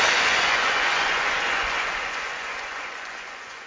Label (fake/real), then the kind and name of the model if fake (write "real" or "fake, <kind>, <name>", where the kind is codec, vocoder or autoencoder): fake, vocoder, Vocos